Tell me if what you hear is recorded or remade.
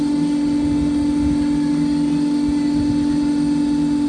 recorded